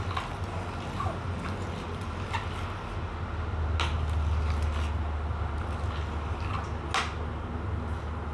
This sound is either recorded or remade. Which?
recorded